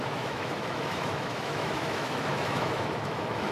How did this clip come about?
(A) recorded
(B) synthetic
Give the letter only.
B